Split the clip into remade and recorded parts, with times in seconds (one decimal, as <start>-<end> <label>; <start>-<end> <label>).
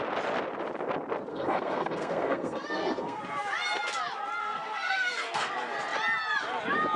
0.0-1.3 recorded; 1.3-3.2 remade; 3.2-4.4 recorded; 4.4-5.5 remade; 5.5-7.0 recorded